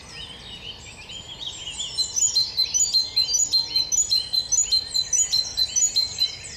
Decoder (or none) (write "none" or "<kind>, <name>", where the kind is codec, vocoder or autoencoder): none